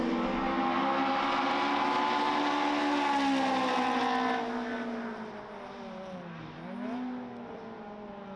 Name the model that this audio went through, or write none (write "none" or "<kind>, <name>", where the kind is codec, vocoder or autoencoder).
none